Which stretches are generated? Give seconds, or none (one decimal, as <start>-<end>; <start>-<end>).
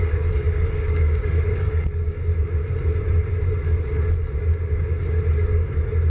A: 0.0-2.3; 5.3-6.1